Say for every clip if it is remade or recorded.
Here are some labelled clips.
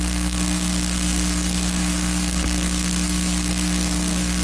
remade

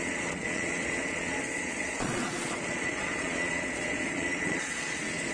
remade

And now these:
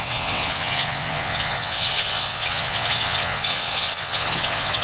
remade